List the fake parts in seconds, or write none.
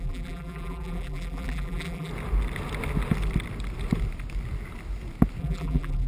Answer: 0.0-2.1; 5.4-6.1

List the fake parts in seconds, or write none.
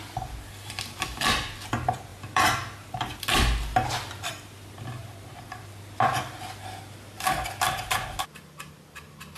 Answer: 2.1-3.2; 5.0-5.6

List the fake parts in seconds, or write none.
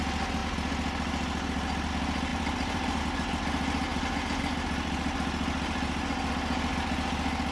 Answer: 2.3-3.0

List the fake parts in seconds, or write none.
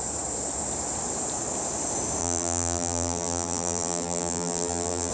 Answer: 2.2-5.1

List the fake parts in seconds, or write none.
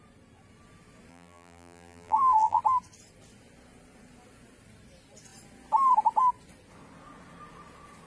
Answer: 1.1-2.6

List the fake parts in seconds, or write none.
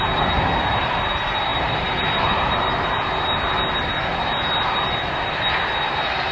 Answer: none